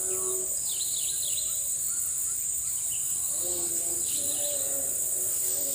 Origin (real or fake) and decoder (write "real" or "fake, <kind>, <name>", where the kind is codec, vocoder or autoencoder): real